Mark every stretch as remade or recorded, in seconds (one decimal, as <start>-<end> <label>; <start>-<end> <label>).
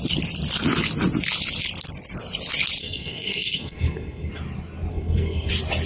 0.0-2.8 recorded; 2.8-4.3 remade; 4.3-4.9 recorded; 4.9-5.5 remade; 5.5-5.9 recorded